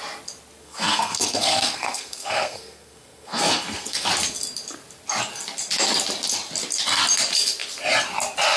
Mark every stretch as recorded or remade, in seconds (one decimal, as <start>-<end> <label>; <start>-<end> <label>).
0.0-0.6 recorded; 0.6-4.1 remade; 4.1-8.6 recorded